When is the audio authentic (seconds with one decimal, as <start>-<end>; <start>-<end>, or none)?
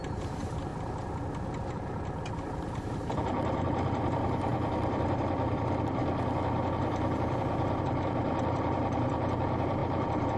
0.7-2.3; 6.0-6.8